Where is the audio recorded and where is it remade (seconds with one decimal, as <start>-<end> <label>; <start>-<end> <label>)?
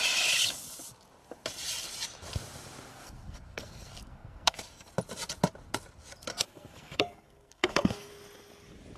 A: 0.0-2.9 recorded; 2.9-4.9 remade; 4.9-6.3 recorded; 6.3-8.1 remade; 8.1-9.0 recorded